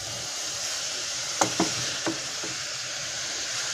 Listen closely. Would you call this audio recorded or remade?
remade